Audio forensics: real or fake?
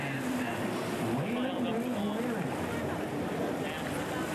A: real